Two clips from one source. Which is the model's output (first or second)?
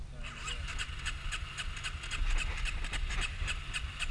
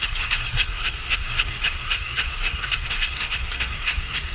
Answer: second